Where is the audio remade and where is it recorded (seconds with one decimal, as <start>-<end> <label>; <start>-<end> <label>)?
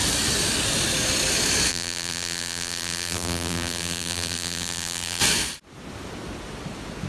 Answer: 0.0-1.7 recorded; 1.7-5.2 remade; 5.2-7.1 recorded